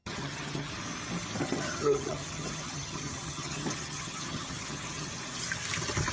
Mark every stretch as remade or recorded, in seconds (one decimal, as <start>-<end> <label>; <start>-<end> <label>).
0.0-0.7 remade; 0.7-1.4 recorded; 1.4-5.1 remade; 5.1-6.1 recorded